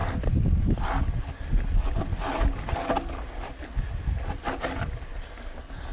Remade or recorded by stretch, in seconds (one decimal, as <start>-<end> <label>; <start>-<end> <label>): 0.0-5.9 recorded